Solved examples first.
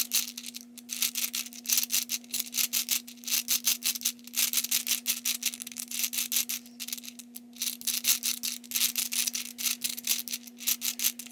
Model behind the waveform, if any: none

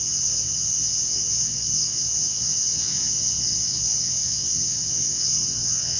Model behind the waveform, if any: vocoder, WaveNeXt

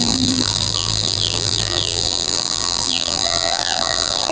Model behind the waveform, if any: vocoder, BigVGAN v2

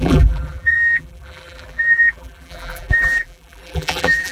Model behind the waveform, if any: vocoder, BigVGAN v2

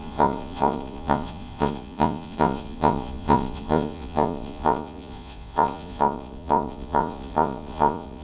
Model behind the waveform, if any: vocoder, Vocos